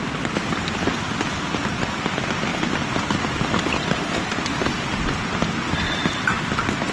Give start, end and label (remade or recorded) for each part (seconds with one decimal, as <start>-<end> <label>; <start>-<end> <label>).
0.0-6.9 recorded